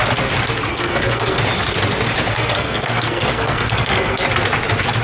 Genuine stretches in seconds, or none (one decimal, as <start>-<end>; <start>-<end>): 0.0-0.7; 1.4-2.3; 4.2-5.0